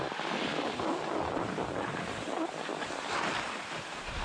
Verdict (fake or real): real